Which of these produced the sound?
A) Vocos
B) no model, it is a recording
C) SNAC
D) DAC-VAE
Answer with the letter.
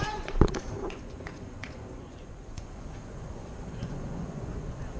A